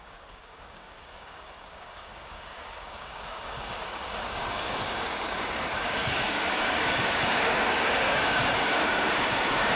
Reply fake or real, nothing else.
fake